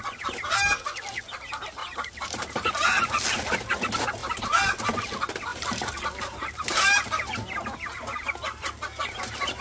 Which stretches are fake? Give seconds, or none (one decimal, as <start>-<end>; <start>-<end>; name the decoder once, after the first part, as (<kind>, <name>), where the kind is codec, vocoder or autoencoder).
1.8-2.9 (vocoder, BigVGAN v2); 5.5-6.8